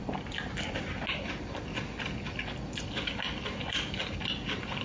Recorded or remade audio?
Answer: recorded